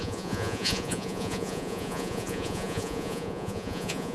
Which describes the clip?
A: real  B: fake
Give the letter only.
B